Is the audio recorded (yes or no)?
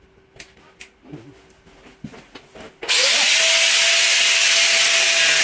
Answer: yes